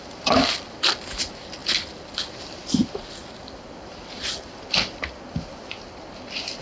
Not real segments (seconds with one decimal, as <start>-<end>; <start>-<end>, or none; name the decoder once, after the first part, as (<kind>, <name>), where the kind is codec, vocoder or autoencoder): none